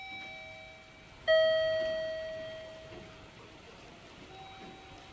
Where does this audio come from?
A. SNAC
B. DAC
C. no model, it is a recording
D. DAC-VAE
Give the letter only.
C